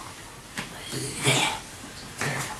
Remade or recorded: recorded